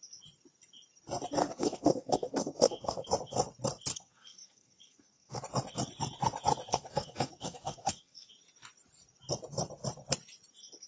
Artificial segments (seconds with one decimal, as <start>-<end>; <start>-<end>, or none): 1.4-3.1; 3.9-5.4; 6.7-8.3